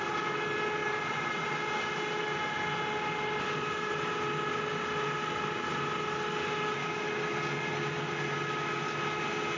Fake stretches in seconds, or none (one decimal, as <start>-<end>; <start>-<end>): 0.8-1.4

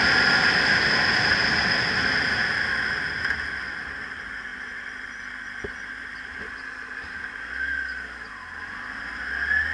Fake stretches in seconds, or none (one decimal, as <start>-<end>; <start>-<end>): none

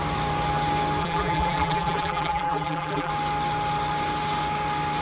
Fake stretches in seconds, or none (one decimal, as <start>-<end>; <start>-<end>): 1.0-3.1

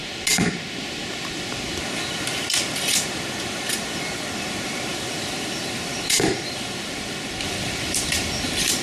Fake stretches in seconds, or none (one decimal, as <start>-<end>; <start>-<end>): 2.9-8.8

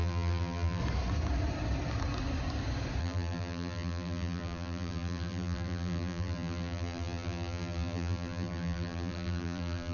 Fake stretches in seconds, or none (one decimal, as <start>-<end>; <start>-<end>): 0.0-0.8; 3.0-9.9